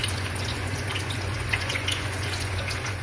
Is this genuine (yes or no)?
no